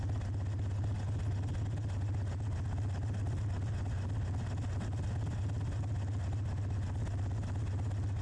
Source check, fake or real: real